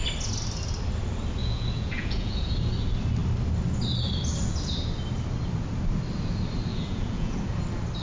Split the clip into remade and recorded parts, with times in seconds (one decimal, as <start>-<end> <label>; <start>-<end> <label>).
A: 0.0-1.4 recorded; 1.4-2.5 remade; 2.5-6.7 recorded; 6.7-7.4 remade; 7.4-8.0 recorded